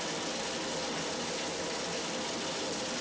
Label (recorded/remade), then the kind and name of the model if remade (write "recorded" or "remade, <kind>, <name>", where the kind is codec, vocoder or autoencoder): recorded